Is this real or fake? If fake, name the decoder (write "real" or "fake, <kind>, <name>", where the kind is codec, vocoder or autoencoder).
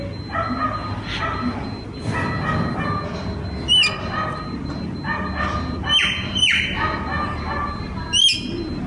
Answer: real